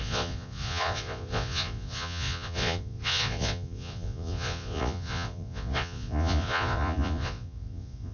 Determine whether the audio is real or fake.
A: fake